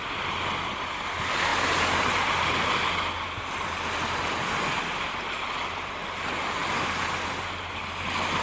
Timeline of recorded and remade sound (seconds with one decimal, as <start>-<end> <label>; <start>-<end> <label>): 0.0-8.4 recorded